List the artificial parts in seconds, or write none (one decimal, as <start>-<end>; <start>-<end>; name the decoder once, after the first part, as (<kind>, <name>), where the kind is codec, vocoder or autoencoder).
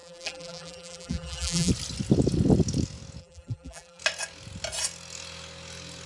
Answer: 0.0-1.7 (vocoder, BigVGAN v2); 3.2-4.0